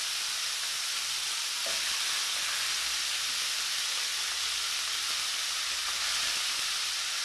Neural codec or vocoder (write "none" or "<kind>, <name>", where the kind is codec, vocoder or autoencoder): none